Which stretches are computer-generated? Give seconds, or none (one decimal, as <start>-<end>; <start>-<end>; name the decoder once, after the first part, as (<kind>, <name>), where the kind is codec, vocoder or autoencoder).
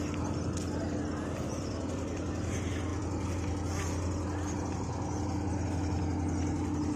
none